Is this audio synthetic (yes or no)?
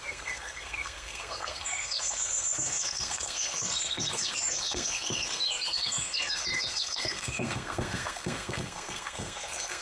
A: yes